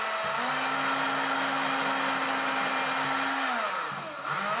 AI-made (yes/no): no